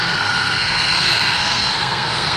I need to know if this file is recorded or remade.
remade